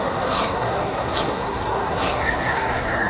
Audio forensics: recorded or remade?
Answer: remade